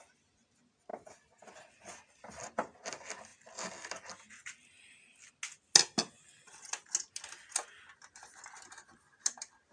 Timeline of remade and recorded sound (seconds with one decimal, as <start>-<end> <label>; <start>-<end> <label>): 0.0-9.7 recorded